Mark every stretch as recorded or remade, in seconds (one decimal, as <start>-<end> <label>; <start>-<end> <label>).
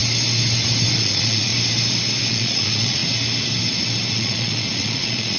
0.0-0.9 recorded; 0.9-1.5 remade; 1.5-2.3 recorded; 2.3-3.0 remade; 3.0-4.1 recorded; 4.1-5.4 remade